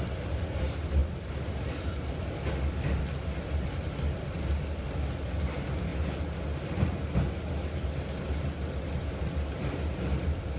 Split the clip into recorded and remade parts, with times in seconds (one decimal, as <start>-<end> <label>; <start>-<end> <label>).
0.0-10.6 recorded